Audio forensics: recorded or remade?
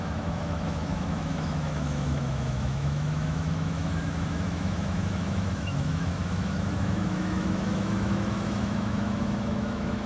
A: remade